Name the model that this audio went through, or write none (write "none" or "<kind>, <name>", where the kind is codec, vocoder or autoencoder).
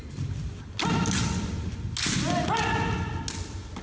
none